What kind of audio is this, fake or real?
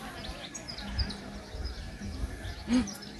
real